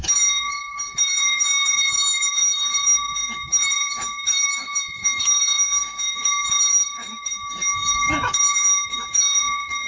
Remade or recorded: remade